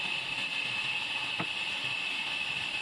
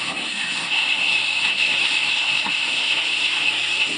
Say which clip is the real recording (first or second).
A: first